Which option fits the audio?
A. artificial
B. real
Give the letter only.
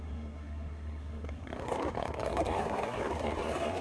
A